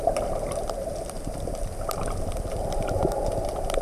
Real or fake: real